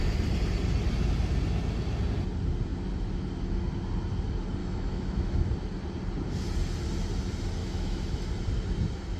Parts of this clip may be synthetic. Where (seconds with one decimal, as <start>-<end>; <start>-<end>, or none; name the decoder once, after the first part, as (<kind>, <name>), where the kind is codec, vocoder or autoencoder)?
4.6-5.4 (autoencoder, DAC-VAE); 7.6-8.3